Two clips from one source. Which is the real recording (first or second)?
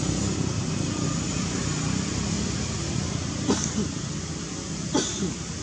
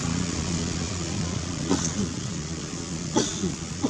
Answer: first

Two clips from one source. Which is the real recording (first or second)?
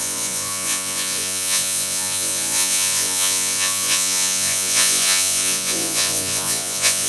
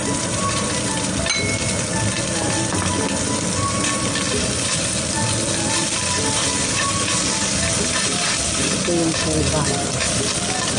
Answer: second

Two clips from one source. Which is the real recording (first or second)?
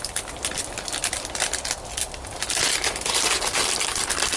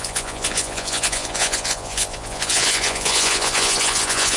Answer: first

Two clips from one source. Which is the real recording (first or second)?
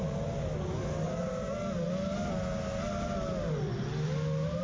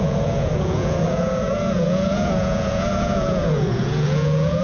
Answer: first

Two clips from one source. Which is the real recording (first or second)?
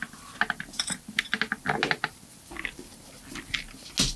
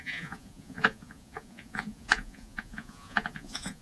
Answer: first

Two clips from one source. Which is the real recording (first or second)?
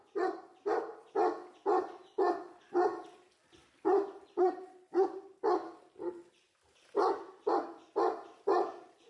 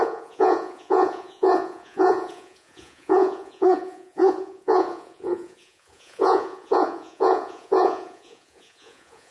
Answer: first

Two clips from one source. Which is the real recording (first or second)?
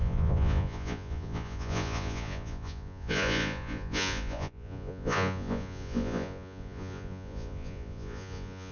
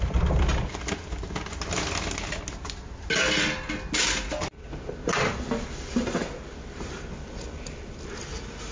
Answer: second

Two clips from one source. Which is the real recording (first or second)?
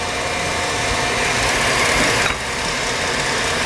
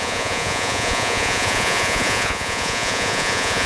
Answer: first